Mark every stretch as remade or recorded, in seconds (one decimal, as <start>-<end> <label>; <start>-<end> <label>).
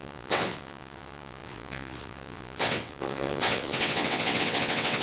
0.0-5.0 remade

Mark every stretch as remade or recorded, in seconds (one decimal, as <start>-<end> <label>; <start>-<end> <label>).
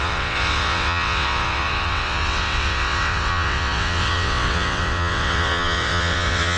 0.0-6.6 remade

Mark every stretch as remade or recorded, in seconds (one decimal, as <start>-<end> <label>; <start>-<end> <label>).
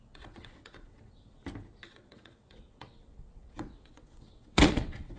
0.0-1.4 remade; 1.4-1.9 recorded; 1.9-5.2 remade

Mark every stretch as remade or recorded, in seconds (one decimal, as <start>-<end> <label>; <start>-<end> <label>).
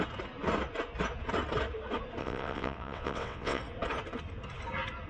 0.0-2.2 recorded; 2.2-3.6 remade; 3.6-5.1 recorded